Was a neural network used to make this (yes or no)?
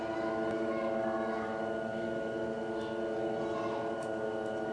no